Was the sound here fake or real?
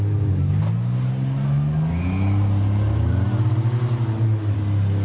real